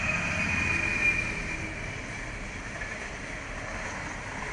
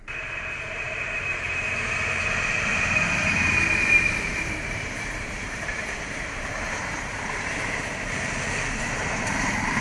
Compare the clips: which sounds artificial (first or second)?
second